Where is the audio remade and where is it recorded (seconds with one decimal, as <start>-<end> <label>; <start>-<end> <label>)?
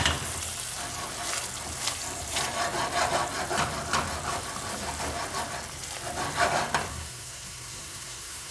0.0-6.9 recorded; 6.9-8.5 remade